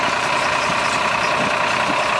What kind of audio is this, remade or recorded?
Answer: recorded